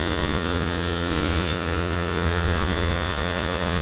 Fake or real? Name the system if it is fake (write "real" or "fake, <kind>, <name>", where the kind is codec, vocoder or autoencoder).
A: fake, vocoder, Vocos